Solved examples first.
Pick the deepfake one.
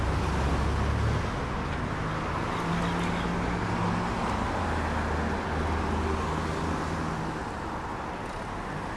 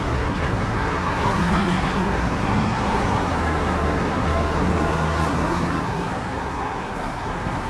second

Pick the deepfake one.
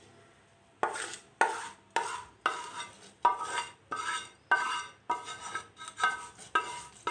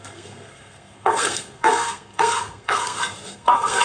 second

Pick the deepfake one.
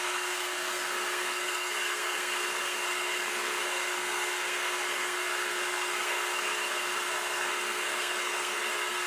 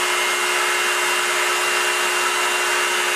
first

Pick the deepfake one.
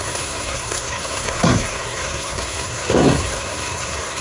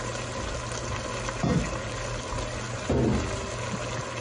first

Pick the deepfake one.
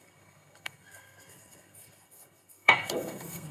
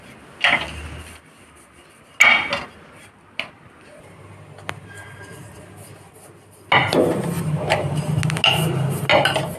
first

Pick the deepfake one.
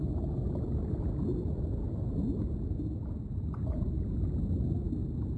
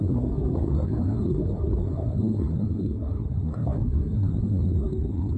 second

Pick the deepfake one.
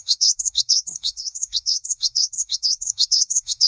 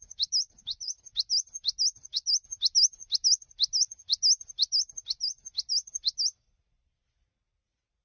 first